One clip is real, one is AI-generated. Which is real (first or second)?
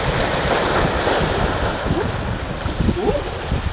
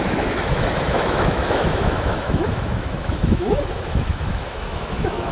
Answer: first